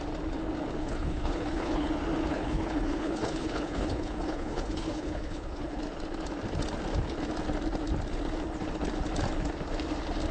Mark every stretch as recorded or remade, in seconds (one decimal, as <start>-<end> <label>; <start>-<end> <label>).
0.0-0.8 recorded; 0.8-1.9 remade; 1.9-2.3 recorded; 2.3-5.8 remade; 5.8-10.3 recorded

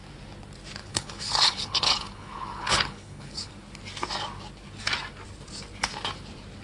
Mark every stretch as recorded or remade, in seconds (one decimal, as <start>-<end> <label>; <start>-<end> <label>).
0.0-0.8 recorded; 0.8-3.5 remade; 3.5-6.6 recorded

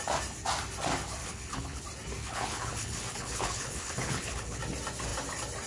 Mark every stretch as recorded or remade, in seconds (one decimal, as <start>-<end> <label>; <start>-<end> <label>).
0.0-1.2 recorded; 1.2-1.8 remade; 1.8-2.2 recorded; 2.2-4.6 remade; 4.6-5.7 recorded

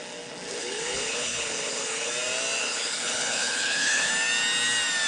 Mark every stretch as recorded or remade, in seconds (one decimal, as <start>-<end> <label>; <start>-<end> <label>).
0.0-0.6 recorded; 0.6-2.1 remade; 2.1-2.6 recorded; 2.6-4.1 remade; 4.1-5.1 recorded

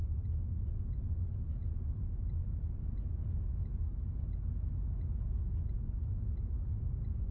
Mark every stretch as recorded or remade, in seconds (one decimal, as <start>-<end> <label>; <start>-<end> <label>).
0.0-7.3 recorded